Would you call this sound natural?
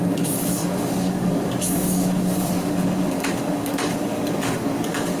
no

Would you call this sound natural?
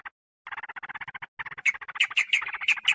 yes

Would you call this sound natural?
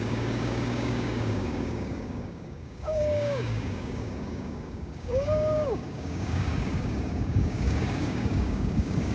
no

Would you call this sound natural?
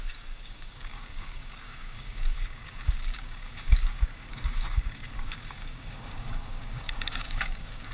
no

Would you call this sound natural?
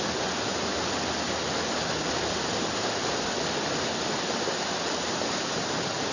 yes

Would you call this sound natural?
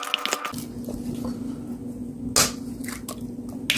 yes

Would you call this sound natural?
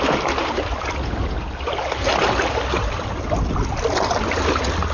yes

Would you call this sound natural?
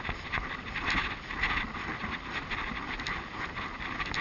yes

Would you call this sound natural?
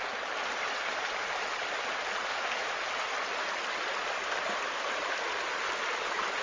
yes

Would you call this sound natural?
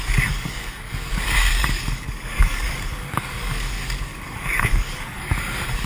no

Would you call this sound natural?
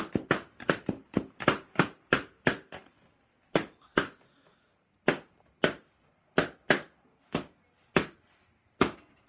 yes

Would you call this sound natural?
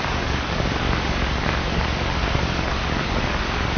no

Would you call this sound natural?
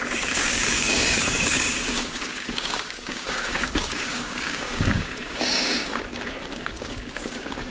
no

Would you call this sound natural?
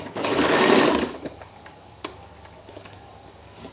no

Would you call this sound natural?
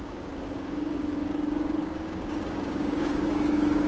no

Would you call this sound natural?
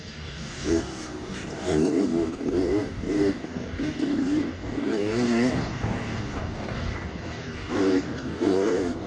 no